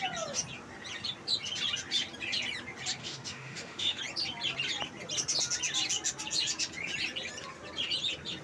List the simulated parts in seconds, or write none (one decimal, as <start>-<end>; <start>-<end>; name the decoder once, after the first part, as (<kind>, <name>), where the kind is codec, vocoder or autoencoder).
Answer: 3.0-4.0 (autoencoder, DAC-VAE)